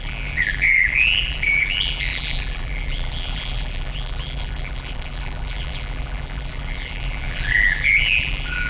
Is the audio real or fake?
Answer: fake